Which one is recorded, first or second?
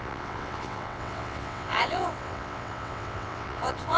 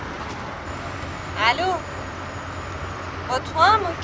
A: second